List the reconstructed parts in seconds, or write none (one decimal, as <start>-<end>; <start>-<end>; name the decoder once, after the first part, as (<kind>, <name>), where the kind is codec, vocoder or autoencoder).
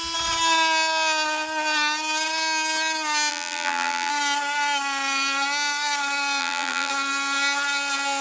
3.3-4.1 (vocoder, BigVGAN v2); 6.4-6.9